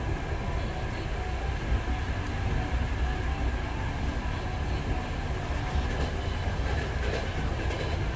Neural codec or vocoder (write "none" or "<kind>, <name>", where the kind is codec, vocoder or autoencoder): none